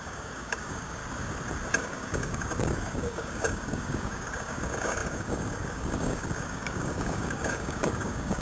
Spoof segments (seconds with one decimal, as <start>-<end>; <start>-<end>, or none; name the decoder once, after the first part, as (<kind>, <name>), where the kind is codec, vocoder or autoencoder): 0.0-1.0 (codec, DAC); 1.8-8.4